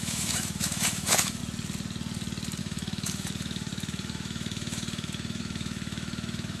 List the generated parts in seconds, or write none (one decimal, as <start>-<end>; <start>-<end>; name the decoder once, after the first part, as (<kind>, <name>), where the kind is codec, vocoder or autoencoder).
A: 0.0-1.4 (autoencoder, DAC-VAE); 2.6-6.6